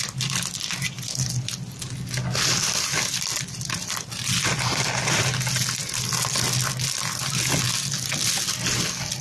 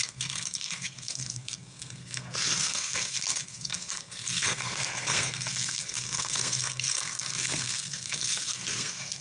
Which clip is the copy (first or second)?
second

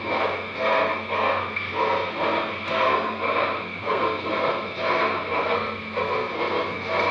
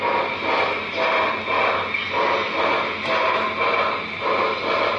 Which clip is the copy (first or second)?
first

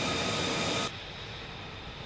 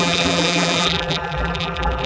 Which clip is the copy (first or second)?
second